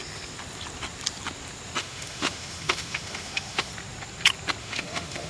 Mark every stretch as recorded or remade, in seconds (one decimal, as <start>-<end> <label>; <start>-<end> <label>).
0.0-1.8 recorded; 1.8-3.7 remade; 3.7-4.6 recorded; 4.6-5.3 remade